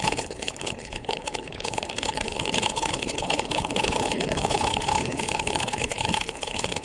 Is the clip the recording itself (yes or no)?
no